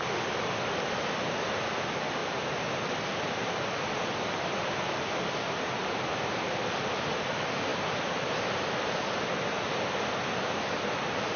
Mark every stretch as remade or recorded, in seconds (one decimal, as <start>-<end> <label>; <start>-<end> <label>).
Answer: 0.0-11.4 recorded

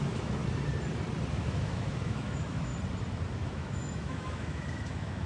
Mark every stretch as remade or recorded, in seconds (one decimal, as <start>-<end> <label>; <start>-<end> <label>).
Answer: 0.0-0.4 remade; 0.4-1.3 recorded; 1.3-2.7 remade; 2.7-3.3 recorded; 3.3-5.3 remade

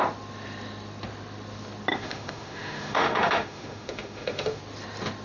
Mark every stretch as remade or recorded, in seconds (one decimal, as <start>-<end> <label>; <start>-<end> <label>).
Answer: 0.0-1.9 recorded; 1.9-4.6 remade; 4.6-5.2 recorded

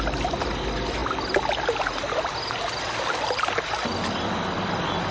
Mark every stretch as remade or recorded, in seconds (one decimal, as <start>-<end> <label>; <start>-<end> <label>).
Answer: 0.0-5.1 recorded